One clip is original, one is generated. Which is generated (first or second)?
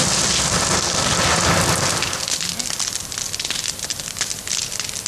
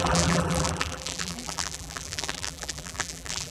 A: second